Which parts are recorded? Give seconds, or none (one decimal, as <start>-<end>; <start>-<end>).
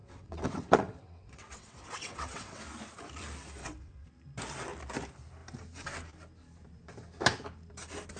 2.6-3.6; 4.1-8.2